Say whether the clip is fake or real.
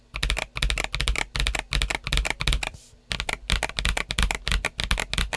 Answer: real